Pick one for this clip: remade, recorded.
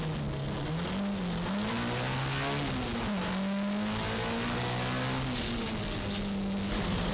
recorded